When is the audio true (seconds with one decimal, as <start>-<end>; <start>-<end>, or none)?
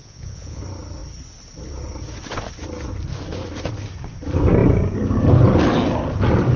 0.6-6.6